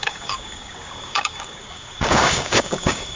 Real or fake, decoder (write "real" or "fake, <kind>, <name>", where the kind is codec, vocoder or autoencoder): fake, codec, DAC